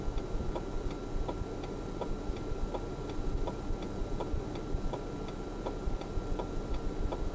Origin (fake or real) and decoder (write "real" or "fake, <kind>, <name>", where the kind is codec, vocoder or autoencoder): fake, vocoder, BigVGAN v2